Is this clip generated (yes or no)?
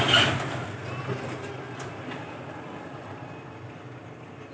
no